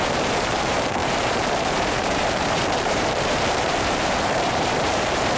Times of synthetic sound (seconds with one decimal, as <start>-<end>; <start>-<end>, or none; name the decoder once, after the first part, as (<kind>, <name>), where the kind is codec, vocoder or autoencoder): 0.0-5.4 (vocoder, BigVGAN v2)